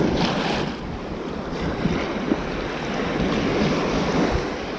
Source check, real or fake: real